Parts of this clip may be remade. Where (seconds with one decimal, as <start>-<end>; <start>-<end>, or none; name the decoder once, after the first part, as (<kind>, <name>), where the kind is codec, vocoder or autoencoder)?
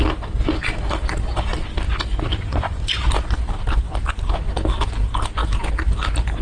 2.5-3.1 (vocoder, Vocos)